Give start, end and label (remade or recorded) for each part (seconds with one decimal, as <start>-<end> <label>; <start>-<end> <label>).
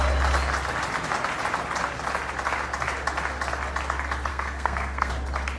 0.0-4.3 recorded; 4.3-5.1 remade; 5.1-5.6 recorded